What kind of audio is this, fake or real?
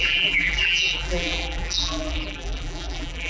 fake